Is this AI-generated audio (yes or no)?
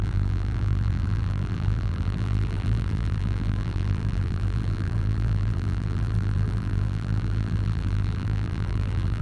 yes